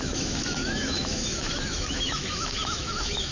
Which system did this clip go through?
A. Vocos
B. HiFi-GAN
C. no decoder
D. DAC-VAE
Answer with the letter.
D